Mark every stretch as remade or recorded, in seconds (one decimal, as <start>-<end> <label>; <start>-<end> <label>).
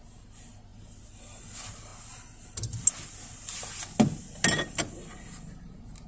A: 0.0-6.1 recorded